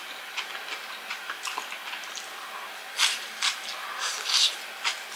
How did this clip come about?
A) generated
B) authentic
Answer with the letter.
B